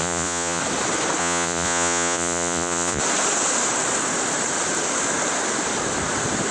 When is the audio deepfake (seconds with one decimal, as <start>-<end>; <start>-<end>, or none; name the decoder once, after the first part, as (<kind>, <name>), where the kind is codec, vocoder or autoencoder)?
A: 0.0-0.6 (vocoder, Vocos); 1.2-3.0